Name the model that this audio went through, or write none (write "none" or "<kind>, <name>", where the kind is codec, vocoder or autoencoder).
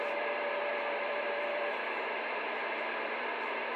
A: vocoder, BigVGAN v2